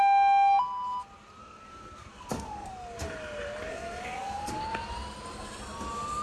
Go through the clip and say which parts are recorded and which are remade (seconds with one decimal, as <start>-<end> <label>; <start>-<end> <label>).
0.0-1.4 recorded; 1.4-2.7 remade; 2.7-3.7 recorded; 3.7-4.5 remade; 4.5-6.2 recorded